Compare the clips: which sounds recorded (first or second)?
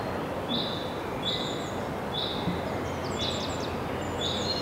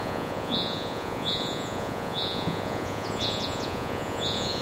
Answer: first